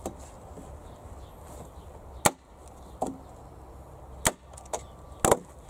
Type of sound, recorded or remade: recorded